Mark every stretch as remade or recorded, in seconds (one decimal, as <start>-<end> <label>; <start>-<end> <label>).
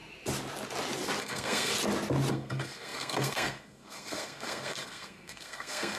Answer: 0.0-1.2 recorded; 1.2-1.7 remade; 1.7-2.3 recorded; 2.3-6.0 remade